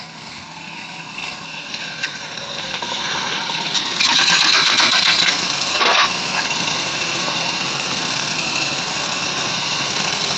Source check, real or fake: fake